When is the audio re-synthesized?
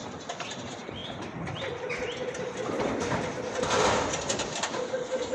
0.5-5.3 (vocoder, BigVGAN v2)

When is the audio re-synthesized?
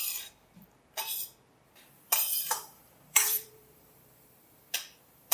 2.3-4.6 (vocoder, BigVGAN v2)